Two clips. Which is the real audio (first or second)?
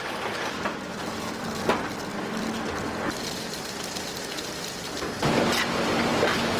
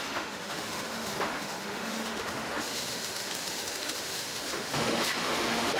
first